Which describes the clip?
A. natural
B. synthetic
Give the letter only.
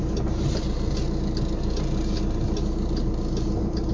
A